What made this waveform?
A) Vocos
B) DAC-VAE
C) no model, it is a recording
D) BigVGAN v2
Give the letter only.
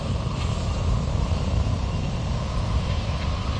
D